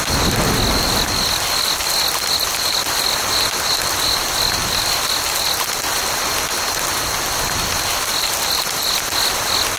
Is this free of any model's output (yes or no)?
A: yes